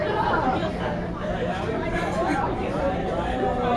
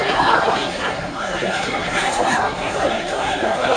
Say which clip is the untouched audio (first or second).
first